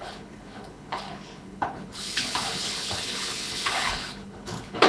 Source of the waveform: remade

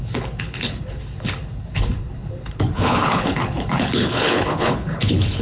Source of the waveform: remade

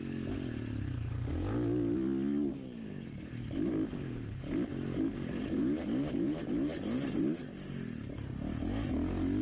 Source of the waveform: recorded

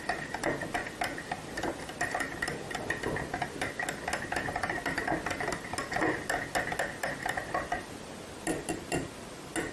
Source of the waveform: recorded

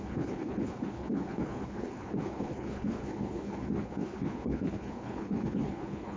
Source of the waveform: remade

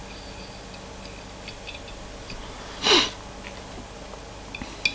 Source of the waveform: recorded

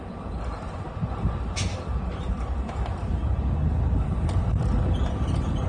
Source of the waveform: recorded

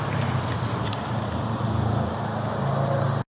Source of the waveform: recorded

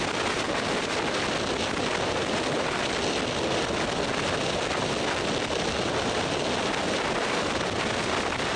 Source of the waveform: recorded